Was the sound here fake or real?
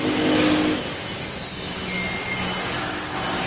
real